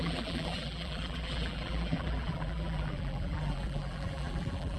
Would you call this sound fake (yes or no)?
yes